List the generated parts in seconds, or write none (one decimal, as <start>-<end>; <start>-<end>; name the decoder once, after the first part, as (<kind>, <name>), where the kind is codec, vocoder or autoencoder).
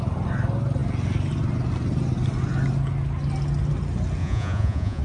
4.2-5.0 (vocoder, Vocos)